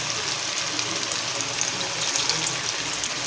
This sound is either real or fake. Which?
real